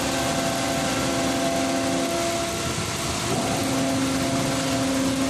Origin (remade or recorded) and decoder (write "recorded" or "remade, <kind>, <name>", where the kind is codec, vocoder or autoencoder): recorded